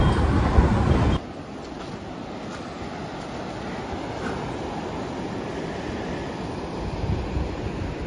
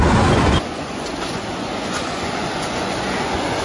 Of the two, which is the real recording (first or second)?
first